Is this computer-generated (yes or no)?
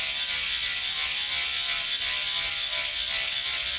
no